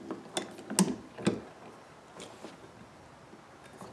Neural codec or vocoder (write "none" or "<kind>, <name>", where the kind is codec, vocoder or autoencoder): none